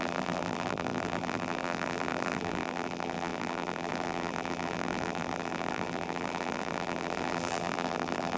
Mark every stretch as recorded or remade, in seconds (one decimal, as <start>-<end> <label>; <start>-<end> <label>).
0.0-8.4 remade